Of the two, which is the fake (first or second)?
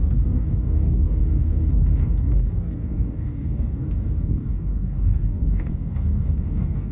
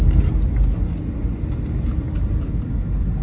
first